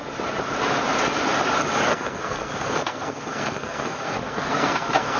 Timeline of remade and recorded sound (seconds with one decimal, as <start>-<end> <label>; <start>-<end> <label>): 0.0-1.9 recorded; 1.9-5.2 remade